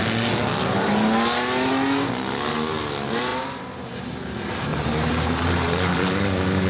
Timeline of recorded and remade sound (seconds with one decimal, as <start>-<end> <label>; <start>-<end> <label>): 0.0-3.3 recorded; 3.3-4.0 remade; 4.0-4.7 recorded; 4.7-6.7 remade